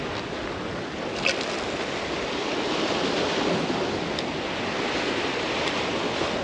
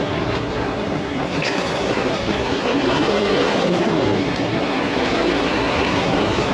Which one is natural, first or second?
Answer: first